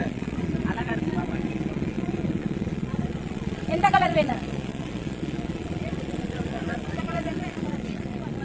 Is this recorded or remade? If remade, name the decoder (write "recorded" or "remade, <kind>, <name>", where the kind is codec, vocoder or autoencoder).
remade, vocoder, Vocos